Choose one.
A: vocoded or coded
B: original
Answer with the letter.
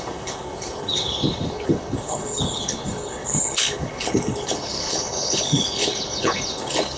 A